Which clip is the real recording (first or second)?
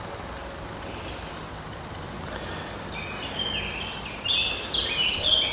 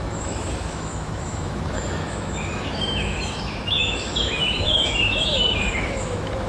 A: first